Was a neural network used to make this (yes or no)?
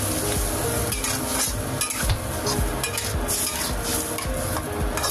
no